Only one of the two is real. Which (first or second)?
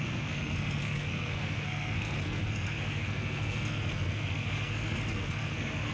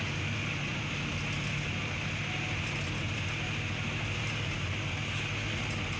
second